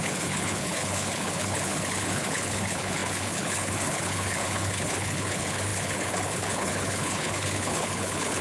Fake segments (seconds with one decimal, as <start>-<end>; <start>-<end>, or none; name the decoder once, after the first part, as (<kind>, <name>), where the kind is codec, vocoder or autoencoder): 0.0-8.4 (codec, HILCodec)